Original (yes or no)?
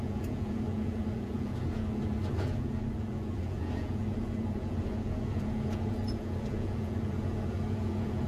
no